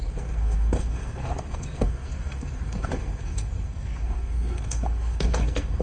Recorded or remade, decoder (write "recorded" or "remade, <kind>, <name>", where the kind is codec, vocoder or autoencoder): remade, codec, SNAC